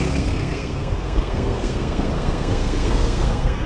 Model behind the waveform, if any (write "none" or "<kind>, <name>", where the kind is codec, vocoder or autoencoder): codec, SNAC